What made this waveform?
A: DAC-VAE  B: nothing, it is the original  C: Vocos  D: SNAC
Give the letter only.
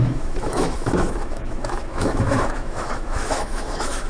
A